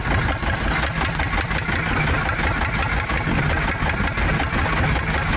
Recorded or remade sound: recorded